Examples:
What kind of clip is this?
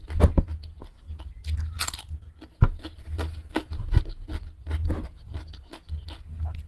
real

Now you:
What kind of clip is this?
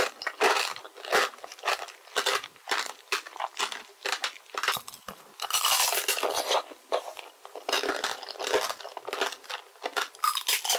real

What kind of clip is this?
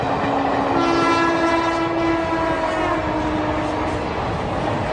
real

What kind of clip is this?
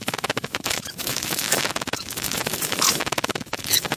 fake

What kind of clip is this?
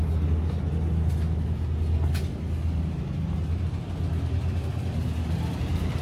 real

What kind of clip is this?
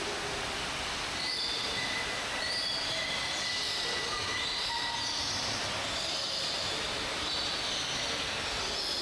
real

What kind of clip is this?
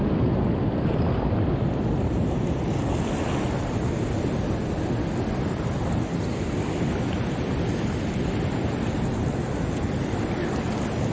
real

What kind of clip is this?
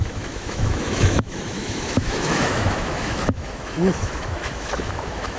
fake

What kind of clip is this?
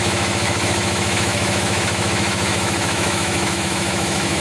fake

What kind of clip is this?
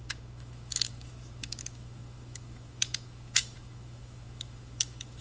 fake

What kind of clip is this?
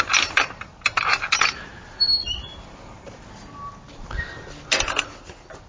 real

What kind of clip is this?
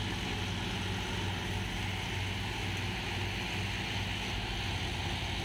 real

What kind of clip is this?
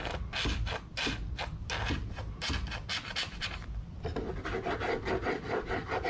real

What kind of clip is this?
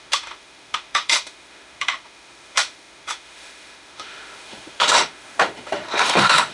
fake